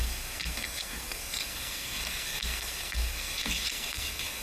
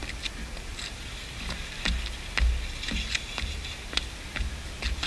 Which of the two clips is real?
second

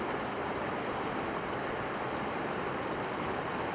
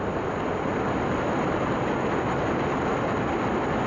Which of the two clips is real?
second